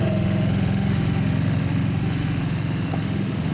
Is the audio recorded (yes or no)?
no